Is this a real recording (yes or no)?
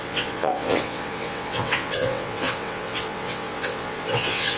no